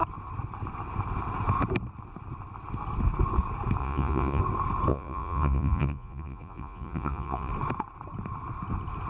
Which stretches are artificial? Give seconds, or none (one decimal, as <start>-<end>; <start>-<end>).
3.8-4.4; 4.9-7.5